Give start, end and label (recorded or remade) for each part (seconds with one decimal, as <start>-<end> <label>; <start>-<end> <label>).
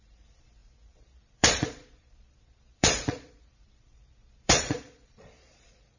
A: 0.0-6.0 remade